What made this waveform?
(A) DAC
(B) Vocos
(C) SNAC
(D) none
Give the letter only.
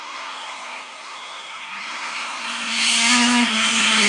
C